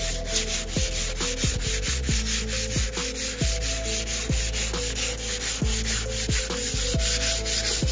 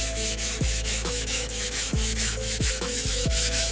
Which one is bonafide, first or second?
first